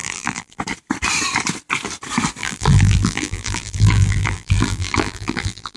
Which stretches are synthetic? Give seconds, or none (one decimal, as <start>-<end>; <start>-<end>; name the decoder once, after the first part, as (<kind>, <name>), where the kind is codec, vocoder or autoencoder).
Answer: 0.0-0.6 (vocoder, BigVGAN v2); 2.4-5.8